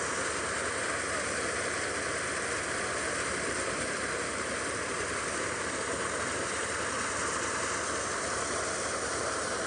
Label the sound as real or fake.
fake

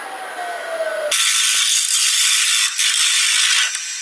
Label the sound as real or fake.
real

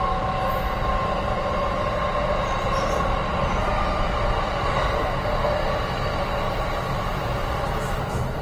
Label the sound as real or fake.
real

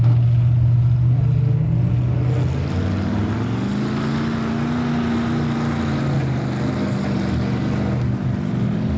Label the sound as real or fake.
real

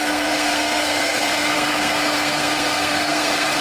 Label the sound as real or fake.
fake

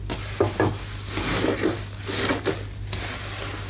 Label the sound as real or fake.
real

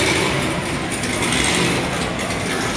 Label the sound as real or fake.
real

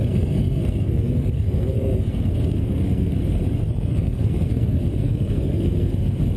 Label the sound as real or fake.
fake